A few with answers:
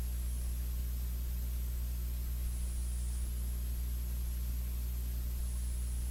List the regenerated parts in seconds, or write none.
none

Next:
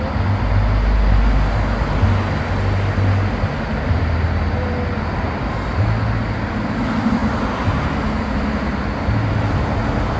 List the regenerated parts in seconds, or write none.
none